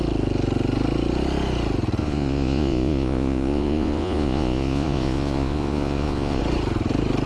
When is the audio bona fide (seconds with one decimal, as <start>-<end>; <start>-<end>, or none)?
0.0-2.0; 6.4-7.3